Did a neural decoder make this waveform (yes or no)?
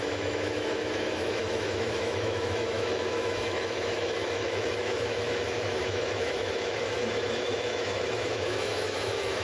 yes